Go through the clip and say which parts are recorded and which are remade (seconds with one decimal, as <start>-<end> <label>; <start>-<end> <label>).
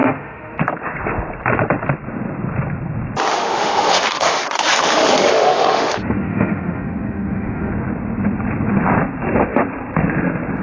0.0-0.6 remade; 0.6-3.3 recorded; 3.3-7.7 remade; 7.7-10.6 recorded